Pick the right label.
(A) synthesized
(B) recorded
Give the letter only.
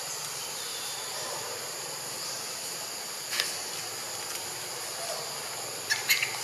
B